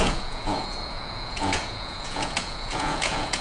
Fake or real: fake